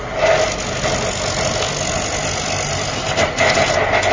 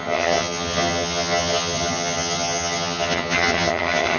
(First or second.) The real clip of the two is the first